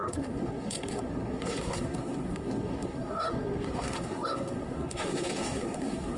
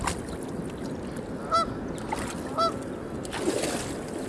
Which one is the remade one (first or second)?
first